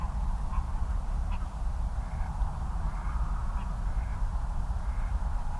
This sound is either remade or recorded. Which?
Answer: remade